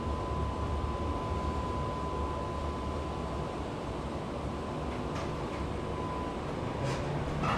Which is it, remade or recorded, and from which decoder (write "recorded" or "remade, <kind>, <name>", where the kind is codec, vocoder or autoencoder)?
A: recorded